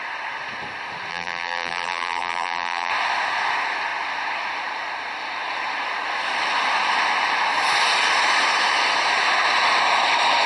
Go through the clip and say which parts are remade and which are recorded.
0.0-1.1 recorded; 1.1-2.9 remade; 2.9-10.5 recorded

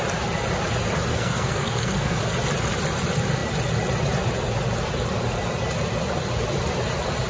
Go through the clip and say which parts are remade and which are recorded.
0.0-1.1 recorded; 1.1-2.2 remade; 2.2-7.3 recorded

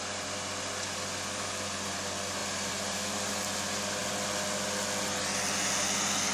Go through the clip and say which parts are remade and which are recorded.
0.0-2.4 recorded; 2.4-3.3 remade; 3.3-6.3 recorded